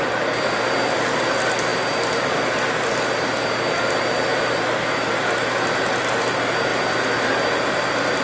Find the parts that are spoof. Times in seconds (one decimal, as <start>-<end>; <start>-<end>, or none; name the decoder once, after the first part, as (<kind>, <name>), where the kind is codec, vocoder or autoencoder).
none